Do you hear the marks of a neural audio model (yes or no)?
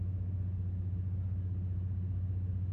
no